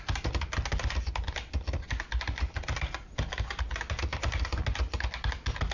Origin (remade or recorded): recorded